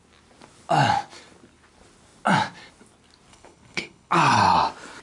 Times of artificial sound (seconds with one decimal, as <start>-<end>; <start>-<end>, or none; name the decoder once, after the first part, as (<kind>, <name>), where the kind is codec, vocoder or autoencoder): 3.3-4.1 (codec, HILCodec)